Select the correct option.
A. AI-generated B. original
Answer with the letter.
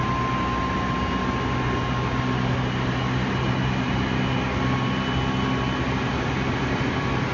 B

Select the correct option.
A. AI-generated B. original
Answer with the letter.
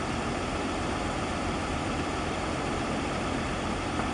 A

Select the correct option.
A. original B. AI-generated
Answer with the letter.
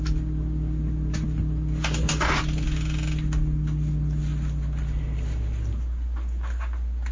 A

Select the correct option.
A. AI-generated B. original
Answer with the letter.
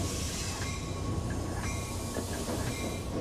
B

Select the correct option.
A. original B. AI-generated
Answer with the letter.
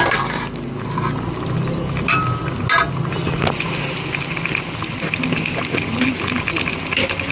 A